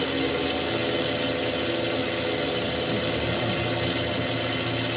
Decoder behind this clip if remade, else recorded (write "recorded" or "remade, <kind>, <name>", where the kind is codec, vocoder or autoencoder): recorded